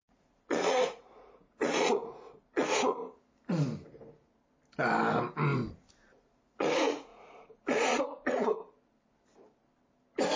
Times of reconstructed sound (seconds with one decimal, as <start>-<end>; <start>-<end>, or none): 0.0-3.0; 6.1-8.5